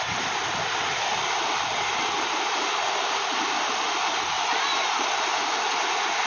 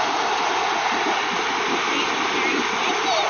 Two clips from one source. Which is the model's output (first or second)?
first